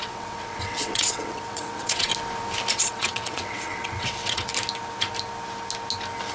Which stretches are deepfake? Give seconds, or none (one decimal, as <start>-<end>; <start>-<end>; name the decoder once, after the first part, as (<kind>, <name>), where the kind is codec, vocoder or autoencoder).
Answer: 0.0-2.1 (vocoder, WaveNeXt); 2.7-4.5